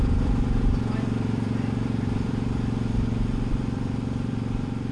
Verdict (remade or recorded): remade